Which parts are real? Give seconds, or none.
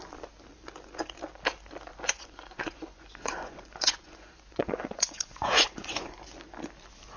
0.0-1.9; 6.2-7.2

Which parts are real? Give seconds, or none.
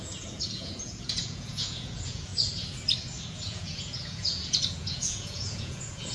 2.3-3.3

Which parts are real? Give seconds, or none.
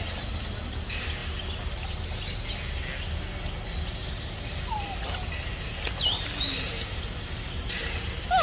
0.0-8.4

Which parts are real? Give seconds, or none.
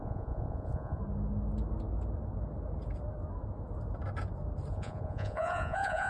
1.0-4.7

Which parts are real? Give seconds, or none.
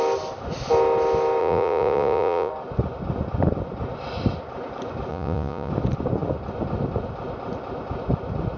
0.0-1.4; 2.5-5.1; 5.7-8.6